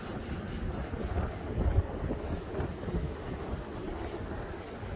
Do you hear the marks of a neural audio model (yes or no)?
no